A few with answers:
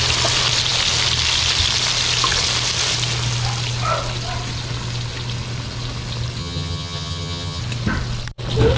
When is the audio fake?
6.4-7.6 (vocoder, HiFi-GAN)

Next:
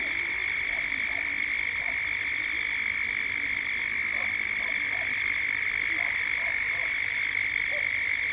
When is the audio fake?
none

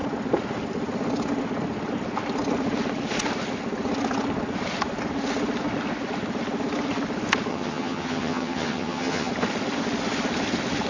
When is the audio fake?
7.5-9.3 (vocoder, HiFi-GAN)

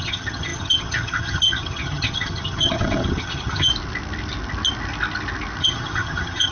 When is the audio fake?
0.0-3.7 (vocoder, HiFi-GAN); 5.6-6.5

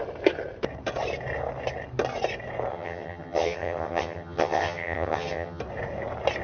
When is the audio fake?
2.7-5.6 (vocoder, HiFi-GAN)

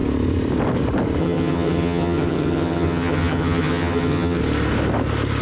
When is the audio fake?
1.2-4.4 (vocoder, HiFi-GAN)

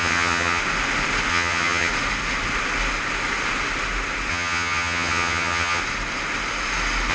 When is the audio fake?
0.0-0.6 (vocoder, HiFi-GAN); 1.3-1.9; 4.3-5.8